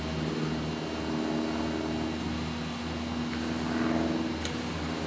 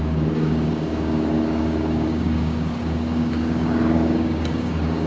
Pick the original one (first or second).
first